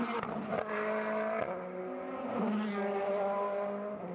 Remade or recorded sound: recorded